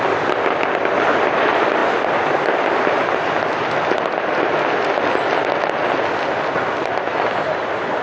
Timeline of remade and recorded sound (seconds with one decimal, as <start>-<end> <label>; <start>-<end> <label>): 0.0-8.0 recorded